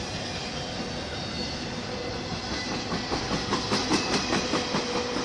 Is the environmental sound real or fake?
real